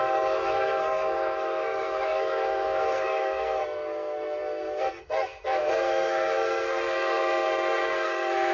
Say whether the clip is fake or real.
fake